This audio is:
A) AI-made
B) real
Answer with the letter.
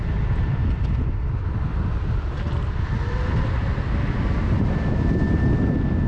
B